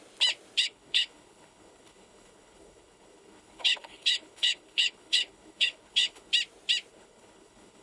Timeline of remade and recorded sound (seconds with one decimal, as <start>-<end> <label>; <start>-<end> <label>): 0.0-0.6 recorded; 0.6-6.3 remade; 6.3-6.9 recorded; 6.9-7.8 remade